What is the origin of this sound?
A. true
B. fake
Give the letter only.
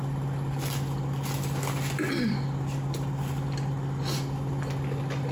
A